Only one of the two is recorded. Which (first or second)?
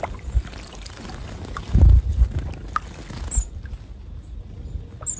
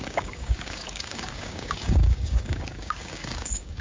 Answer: first